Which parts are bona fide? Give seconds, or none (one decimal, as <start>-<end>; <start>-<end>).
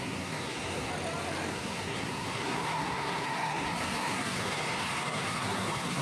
0.9-1.5